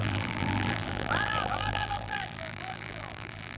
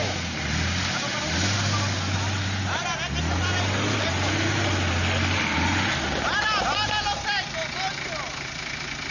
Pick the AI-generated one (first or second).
first